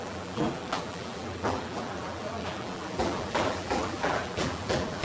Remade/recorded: remade